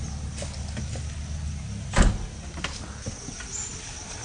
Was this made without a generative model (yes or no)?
yes